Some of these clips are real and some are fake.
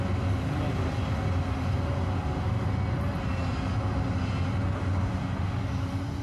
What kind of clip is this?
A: real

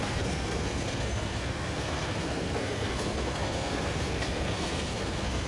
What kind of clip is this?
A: fake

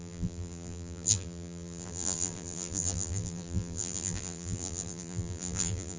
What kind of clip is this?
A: fake